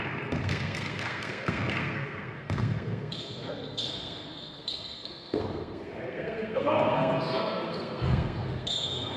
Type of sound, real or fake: fake